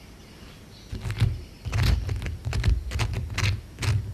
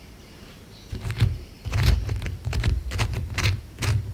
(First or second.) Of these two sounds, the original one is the first